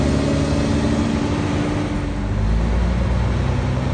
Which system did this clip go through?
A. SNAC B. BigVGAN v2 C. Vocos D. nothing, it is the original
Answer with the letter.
D